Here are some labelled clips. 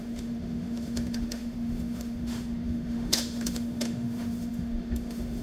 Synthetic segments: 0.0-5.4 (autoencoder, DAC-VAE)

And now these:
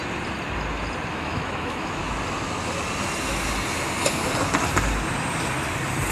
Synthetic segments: 1.1-2.0 (autoencoder, DAC-VAE)

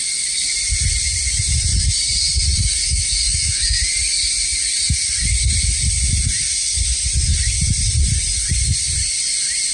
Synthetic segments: 2.8-3.8 (autoencoder, DAC-VAE)

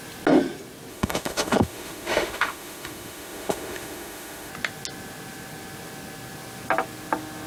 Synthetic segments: 0.9-4.5 (autoencoder, DAC-VAE)

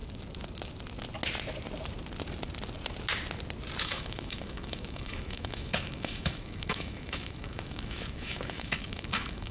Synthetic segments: 3.8-9.5 (autoencoder, DAC-VAE)